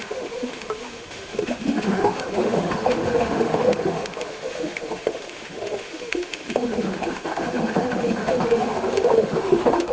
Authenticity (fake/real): fake